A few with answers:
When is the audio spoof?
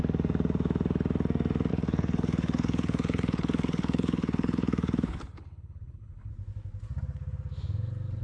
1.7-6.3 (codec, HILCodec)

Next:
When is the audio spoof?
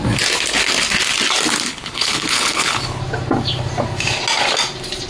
1.7-3.0 (codec, HILCodec)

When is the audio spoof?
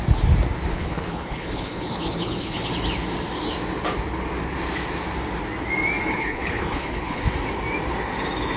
0.7-2.7 (codec, HILCodec); 6.1-7.2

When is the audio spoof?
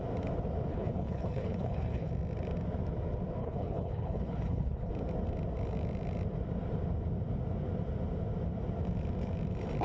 0.7-2.1 (codec, HILCodec); 3.4-4.9